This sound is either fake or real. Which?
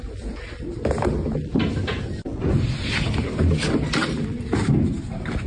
real